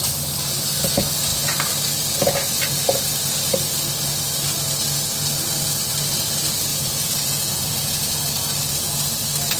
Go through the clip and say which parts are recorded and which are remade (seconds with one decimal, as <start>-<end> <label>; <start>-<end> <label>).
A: 0.0-6.7 recorded; 6.7-8.2 remade; 8.2-9.6 recorded